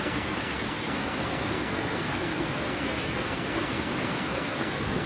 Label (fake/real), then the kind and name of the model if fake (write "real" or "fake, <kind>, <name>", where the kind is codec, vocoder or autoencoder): fake, codec, SNAC